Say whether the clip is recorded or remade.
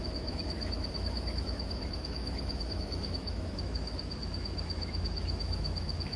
remade